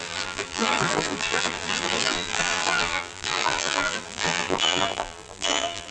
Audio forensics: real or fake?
fake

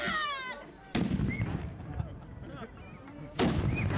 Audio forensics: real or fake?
real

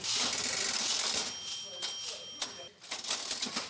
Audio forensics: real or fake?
real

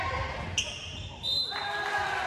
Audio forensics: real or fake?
real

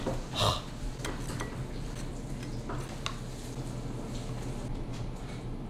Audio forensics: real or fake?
real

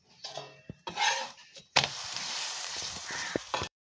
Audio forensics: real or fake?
fake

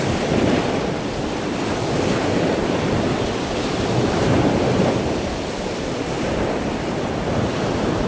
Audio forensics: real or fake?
fake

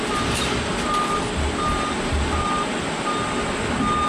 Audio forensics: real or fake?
real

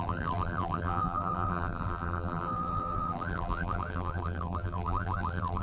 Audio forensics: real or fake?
fake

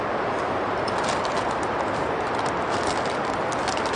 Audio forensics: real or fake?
real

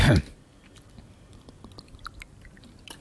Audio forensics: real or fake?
real